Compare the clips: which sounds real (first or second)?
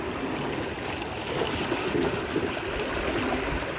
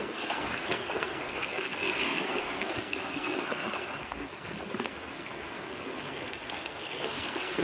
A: first